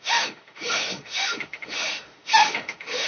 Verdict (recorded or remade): remade